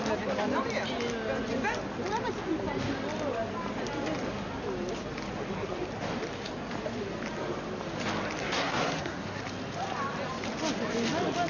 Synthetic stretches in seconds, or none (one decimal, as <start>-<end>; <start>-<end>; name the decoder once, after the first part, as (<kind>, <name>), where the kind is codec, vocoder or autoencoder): 8.4-9.4 (codec, SNAC)